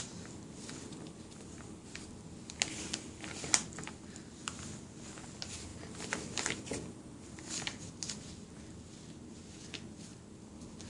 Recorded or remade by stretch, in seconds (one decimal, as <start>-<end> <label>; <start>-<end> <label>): 0.0-10.9 recorded